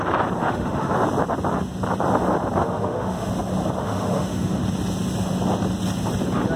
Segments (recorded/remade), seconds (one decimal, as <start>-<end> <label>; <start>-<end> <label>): 0.0-0.4 recorded; 0.4-0.9 remade; 0.9-2.6 recorded; 2.6-3.3 remade; 3.3-3.8 recorded; 3.8-4.6 remade; 4.6-6.6 recorded